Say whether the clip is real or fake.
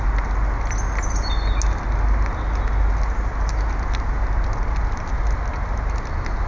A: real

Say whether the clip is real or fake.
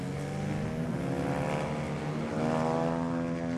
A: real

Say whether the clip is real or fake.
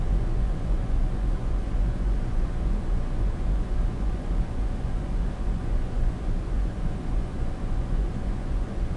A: fake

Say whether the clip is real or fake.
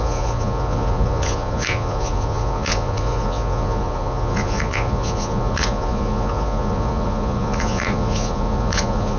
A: fake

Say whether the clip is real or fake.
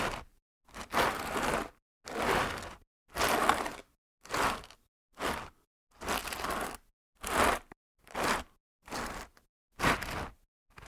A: real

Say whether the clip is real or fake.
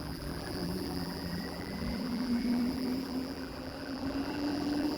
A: fake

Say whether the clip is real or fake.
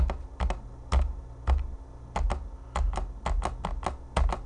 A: real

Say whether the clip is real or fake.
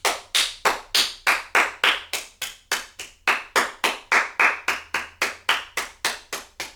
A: real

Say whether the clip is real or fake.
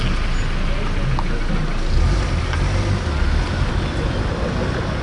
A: real